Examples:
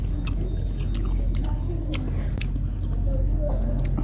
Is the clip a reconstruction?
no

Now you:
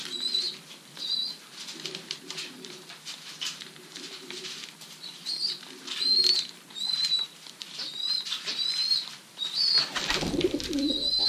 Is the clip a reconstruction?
yes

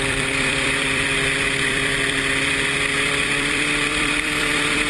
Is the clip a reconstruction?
yes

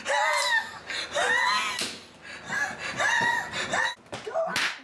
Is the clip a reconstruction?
no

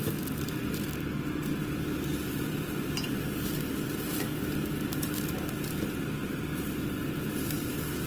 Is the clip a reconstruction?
no